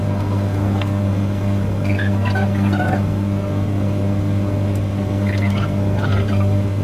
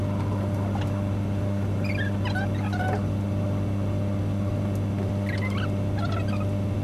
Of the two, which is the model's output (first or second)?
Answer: first